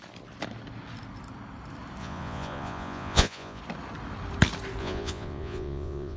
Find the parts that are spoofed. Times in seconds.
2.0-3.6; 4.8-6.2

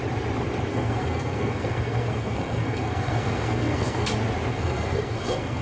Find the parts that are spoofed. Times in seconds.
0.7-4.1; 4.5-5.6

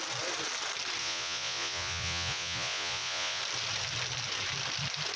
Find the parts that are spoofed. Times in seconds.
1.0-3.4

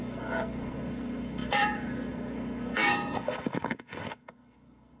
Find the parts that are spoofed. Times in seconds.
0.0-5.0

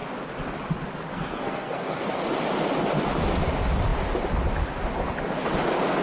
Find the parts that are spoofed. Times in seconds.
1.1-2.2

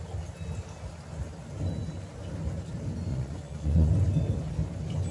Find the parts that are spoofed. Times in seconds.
3.1-3.9